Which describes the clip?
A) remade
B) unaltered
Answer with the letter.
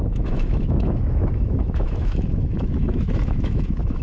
A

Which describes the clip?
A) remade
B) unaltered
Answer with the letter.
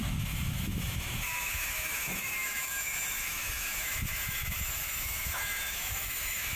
A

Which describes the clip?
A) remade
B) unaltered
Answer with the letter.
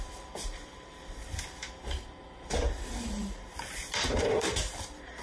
A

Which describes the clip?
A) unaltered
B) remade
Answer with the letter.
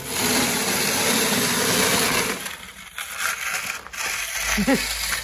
A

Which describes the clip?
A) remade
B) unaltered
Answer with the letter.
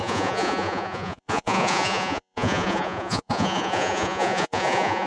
A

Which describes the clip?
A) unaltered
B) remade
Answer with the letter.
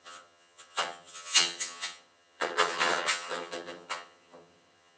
B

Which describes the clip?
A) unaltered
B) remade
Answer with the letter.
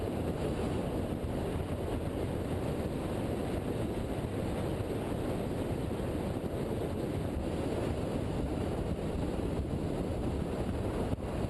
A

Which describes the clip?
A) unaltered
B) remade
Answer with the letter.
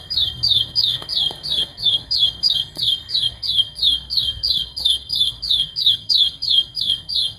B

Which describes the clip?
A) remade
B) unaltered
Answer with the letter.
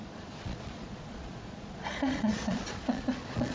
A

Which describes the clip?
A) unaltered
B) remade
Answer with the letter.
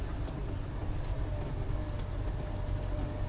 A